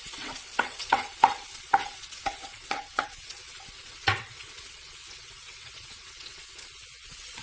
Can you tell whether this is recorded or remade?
remade